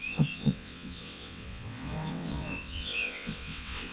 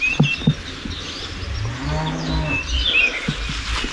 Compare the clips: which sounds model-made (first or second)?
first